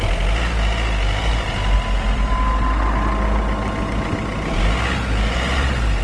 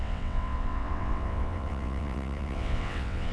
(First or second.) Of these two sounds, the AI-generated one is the second